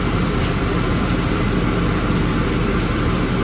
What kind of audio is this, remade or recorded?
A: remade